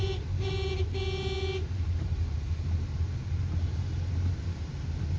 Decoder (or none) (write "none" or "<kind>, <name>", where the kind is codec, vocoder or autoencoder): none